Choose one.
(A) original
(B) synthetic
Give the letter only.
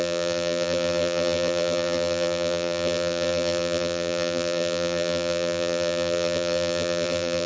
B